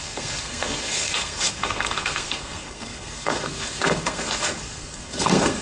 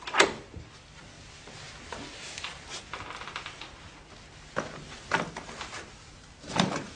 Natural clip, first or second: second